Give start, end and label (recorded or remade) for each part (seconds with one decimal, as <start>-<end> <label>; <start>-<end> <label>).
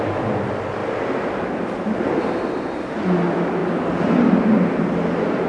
0.0-0.8 recorded; 0.8-2.1 remade; 2.1-5.5 recorded